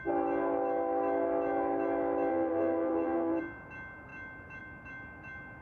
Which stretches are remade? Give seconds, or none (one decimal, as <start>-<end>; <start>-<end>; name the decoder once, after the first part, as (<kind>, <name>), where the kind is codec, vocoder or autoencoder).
2.3-3.4 (vocoder, BigVGAN v2)